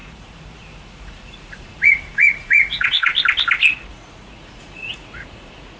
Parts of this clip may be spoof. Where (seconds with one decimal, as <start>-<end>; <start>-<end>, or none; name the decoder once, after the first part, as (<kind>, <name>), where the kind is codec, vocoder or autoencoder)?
0.0-3.1 (vocoder, Vocos); 3.9-5.8